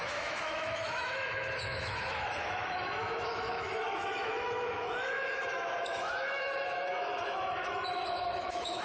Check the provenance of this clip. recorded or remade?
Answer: remade